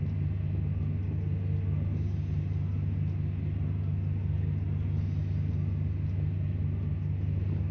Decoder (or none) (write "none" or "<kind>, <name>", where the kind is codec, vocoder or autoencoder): none